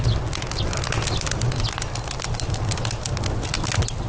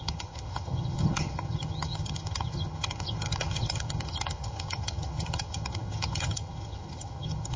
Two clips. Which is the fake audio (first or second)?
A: second